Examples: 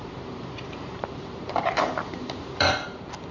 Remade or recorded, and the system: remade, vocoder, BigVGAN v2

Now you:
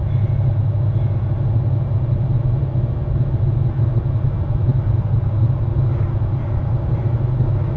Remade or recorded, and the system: recorded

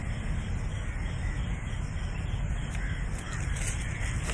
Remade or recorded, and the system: recorded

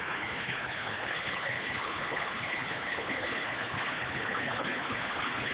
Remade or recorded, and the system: remade, codec, HILCodec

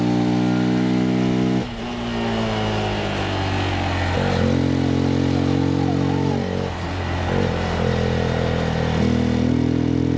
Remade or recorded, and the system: recorded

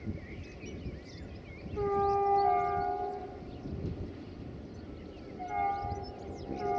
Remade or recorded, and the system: recorded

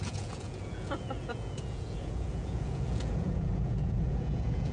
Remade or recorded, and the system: remade, vocoder, Vocos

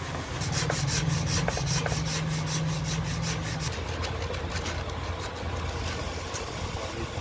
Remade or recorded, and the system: recorded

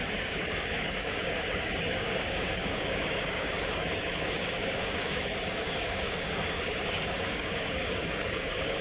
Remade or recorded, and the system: remade, codec, DAC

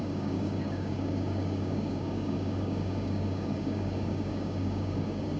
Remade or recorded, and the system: remade, codec, DAC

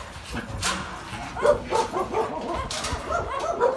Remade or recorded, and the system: recorded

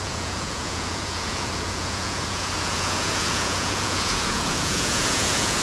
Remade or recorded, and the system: remade, vocoder, Vocos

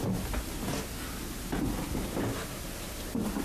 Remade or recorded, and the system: recorded